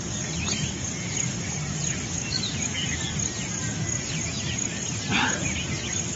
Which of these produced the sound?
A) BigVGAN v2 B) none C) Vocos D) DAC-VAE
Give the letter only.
B